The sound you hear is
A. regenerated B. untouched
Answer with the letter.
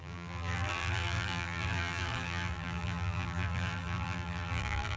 A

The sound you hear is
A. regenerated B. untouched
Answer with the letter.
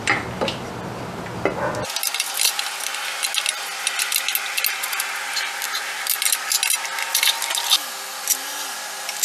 B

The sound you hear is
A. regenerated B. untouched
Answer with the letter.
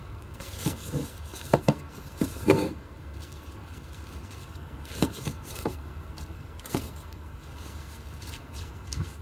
A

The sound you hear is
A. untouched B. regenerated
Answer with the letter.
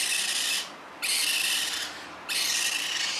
A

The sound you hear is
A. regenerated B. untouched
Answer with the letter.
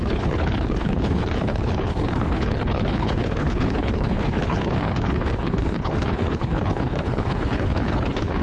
A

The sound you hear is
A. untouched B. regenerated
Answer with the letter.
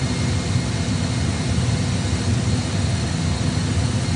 A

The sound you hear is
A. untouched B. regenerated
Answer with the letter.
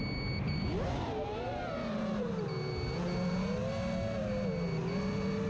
A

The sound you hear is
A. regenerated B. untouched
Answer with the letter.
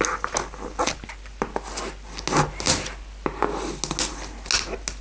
B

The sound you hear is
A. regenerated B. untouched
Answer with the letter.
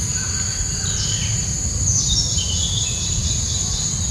B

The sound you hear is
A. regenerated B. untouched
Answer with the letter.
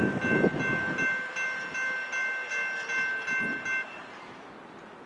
B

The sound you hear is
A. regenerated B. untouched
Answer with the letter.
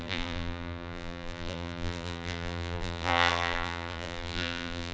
A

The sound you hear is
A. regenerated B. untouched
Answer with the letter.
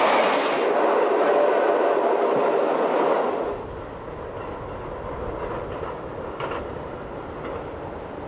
B